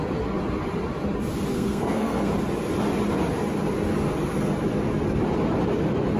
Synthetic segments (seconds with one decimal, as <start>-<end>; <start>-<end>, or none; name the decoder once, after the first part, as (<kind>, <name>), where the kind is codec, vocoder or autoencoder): 1.5-2.3 (codec, SNAC)